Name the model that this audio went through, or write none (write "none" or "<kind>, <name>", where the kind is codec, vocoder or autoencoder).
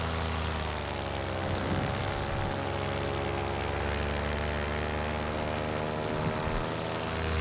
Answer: none